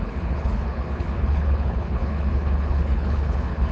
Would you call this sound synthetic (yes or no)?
yes